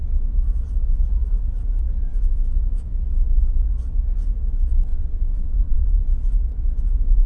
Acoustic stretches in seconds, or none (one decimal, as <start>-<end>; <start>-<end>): 0.0-4.9; 6.0-7.3